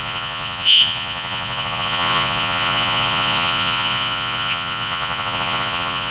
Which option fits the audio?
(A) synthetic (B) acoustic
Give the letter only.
A